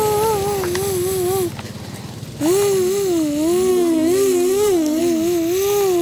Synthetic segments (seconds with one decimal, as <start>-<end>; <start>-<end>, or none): 3.7-5.0